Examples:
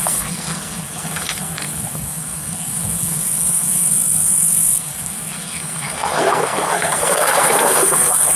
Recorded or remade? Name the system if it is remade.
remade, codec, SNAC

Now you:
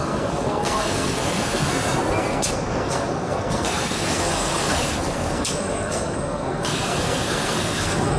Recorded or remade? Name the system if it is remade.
remade, codec, SNAC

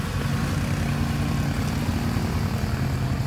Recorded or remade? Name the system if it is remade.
recorded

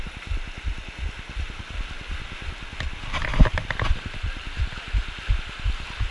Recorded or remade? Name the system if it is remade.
recorded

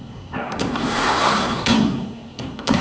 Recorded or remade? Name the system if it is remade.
remade, codec, SNAC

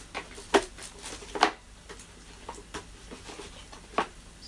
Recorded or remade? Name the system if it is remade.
recorded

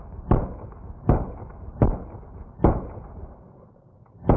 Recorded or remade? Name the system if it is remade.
recorded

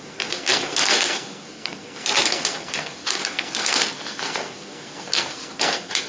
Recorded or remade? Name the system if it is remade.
remade, codec, SNAC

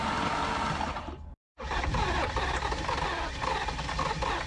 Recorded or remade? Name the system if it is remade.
recorded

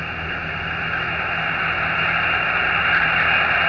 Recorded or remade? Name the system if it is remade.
recorded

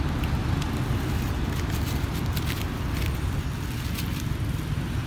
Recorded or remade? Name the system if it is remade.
recorded